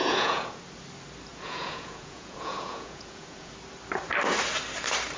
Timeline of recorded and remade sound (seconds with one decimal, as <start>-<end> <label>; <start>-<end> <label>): 0.0-0.6 remade; 0.6-1.3 recorded; 1.3-3.5 remade; 3.5-5.2 recorded